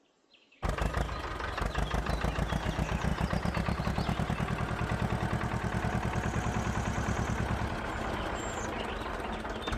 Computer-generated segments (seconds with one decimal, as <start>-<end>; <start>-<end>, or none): 3.1-3.8